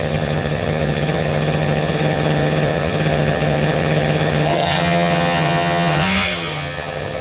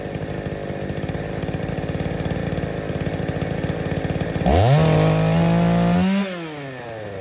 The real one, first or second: second